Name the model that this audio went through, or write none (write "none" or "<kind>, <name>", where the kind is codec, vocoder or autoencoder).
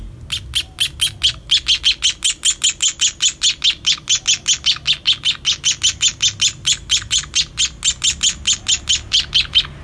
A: none